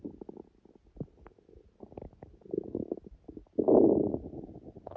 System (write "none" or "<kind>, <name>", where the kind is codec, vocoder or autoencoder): none